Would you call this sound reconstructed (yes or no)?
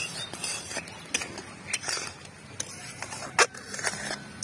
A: no